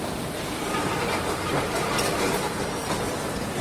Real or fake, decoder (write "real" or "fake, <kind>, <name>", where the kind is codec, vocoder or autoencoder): fake, vocoder, BigVGAN v2